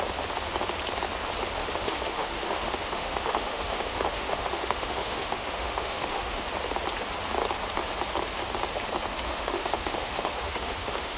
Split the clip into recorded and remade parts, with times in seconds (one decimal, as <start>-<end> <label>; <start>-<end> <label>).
0.0-1.6 recorded; 1.6-6.4 remade; 6.4-9.1 recorded; 9.1-11.2 remade